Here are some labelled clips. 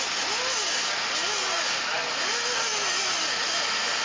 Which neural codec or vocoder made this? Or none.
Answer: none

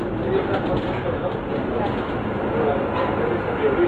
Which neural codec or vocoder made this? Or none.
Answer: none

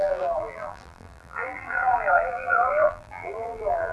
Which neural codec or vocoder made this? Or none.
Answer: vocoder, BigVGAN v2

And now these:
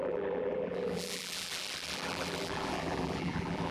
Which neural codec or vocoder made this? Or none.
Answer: vocoder, BigVGAN v2